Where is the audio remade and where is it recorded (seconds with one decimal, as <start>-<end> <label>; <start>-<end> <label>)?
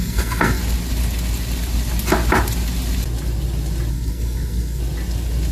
0.0-0.6 remade; 0.6-3.9 recorded; 3.9-4.8 remade; 4.8-5.5 recorded